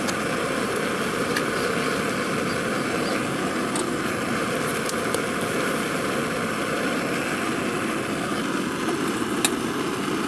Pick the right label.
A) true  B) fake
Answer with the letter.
A